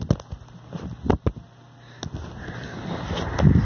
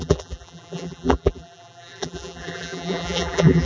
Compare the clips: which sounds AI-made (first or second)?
second